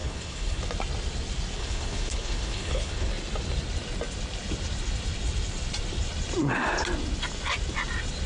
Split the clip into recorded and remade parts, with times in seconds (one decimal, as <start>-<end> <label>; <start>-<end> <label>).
0.0-0.6 remade; 0.6-1.6 recorded; 1.6-3.1 remade; 3.1-8.3 recorded